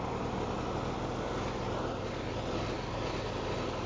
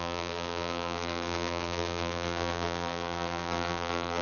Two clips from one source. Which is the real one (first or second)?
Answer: first